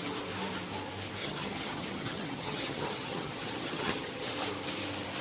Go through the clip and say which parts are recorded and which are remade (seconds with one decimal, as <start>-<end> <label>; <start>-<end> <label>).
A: 0.0-1.2 recorded; 1.2-4.3 remade; 4.3-5.2 recorded